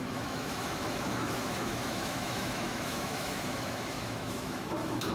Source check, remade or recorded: remade